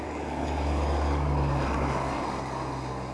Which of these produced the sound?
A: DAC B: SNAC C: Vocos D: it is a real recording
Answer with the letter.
A